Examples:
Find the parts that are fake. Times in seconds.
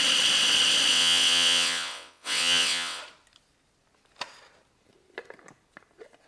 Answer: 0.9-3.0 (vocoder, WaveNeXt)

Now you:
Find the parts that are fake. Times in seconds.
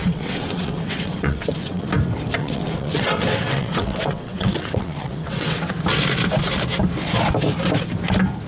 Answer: 0.0-1.9 (vocoder, WaveNeXt); 2.4-5.7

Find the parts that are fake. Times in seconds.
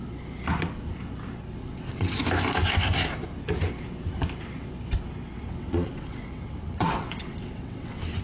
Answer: 1.6-2.2 (vocoder, WaveNeXt); 5.3-8.2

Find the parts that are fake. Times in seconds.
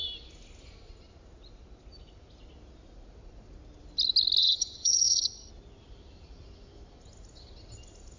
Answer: 4.4-5.5 (vocoder, WaveNeXt)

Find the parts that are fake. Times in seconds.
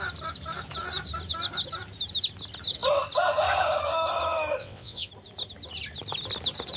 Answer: 4.6-5.1 (vocoder, WaveNeXt)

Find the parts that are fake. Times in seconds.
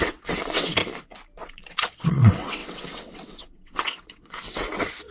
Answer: 0.0-0.8 (vocoder, WaveNeXt); 1.4-5.1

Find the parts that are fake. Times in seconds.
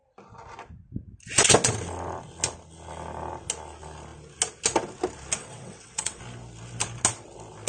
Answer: 5.4-6.2 (vocoder, WaveNeXt)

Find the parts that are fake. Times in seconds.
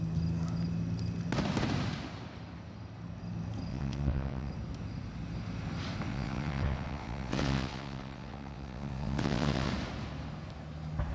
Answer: 3.7-4.5 (vocoder, WaveNeXt); 6.1-9.7